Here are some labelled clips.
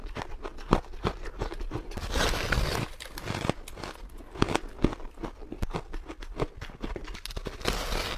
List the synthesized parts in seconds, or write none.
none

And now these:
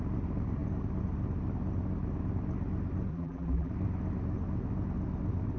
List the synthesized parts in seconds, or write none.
3.1-3.7 (vocoder, BigVGAN v2)

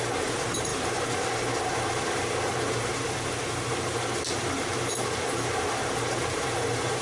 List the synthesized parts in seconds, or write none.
0.0-7.0 (vocoder, BigVGAN v2)

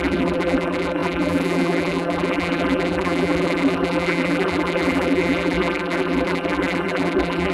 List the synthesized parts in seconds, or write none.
0.0-7.5 (vocoder, BigVGAN v2)